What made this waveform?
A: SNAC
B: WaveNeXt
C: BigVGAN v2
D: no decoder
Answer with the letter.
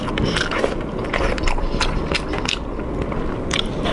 D